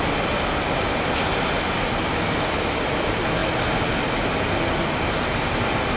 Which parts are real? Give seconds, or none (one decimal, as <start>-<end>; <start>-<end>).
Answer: 0.0-6.0